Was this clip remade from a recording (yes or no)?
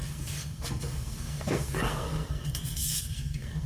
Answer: yes